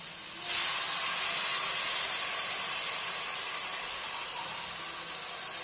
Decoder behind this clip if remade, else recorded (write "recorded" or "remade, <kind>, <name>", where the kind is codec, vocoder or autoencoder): recorded